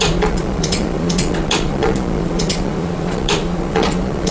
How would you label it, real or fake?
fake